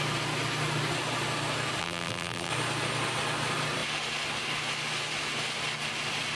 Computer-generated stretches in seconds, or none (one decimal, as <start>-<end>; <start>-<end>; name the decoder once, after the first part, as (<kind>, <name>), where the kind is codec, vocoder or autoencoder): 1.8-2.5 (vocoder, BigVGAN v2)